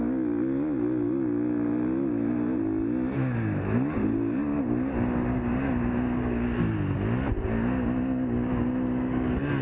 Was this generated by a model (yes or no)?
no